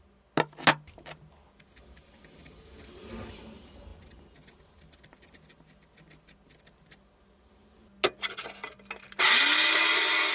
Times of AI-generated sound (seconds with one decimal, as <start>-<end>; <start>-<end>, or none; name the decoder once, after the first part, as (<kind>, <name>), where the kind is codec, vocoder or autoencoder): none